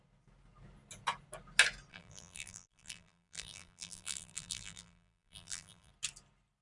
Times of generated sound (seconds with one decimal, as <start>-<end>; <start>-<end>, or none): 1.9-5.9